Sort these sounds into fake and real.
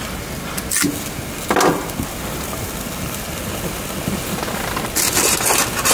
real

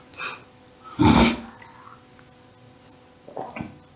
real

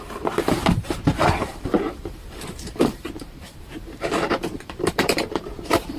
fake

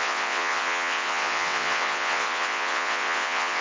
fake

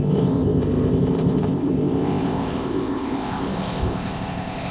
fake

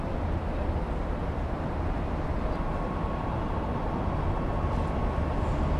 real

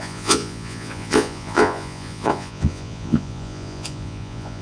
fake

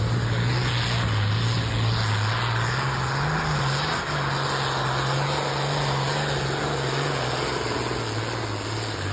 real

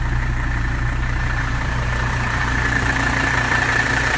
fake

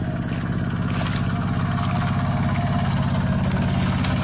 real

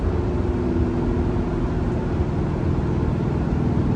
real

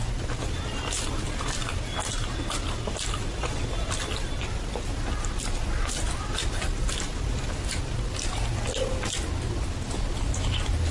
real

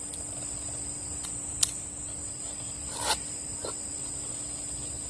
real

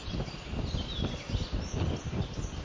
real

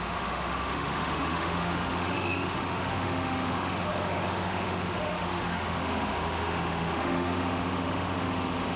fake